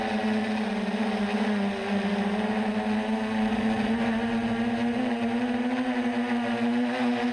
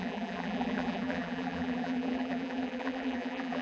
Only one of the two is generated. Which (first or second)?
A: second